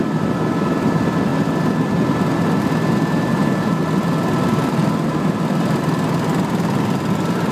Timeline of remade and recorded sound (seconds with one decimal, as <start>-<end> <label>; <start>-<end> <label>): 0.0-7.5 recorded